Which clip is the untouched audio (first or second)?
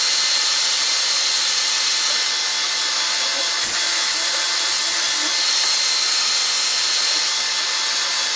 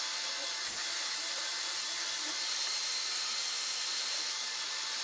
first